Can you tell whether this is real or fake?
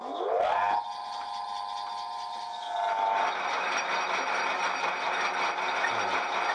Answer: real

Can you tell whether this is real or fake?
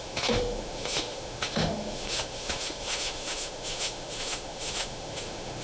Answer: fake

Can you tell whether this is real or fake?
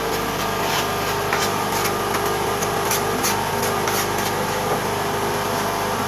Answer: real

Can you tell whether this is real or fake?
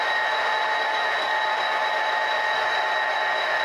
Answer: real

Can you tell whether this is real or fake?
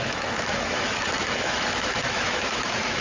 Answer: fake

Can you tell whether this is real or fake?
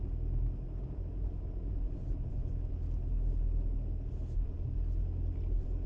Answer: real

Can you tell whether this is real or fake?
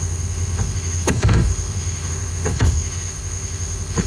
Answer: fake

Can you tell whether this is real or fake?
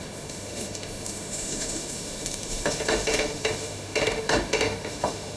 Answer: fake